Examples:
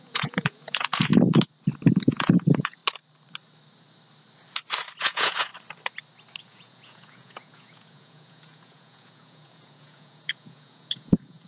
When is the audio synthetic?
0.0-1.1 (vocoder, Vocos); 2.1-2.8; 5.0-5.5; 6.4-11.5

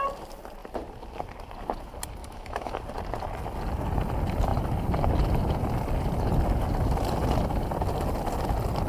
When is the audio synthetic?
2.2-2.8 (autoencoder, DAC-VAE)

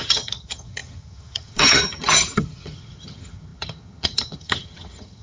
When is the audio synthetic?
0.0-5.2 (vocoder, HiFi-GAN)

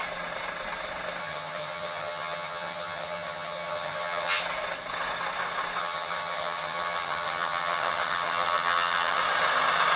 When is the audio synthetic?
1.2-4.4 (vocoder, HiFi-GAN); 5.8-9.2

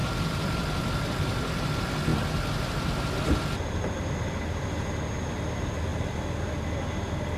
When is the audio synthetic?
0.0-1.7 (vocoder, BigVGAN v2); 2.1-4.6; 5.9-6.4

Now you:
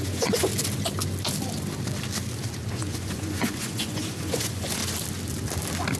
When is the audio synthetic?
0.0-0.5 (vocoder, Vocos); 2.7-4.8

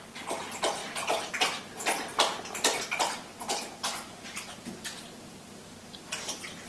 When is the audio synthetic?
none